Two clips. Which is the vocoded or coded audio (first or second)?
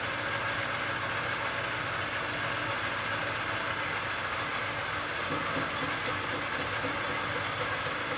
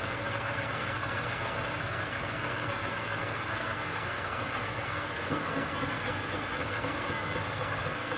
second